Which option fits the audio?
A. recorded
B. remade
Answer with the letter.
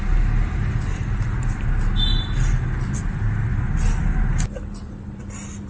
A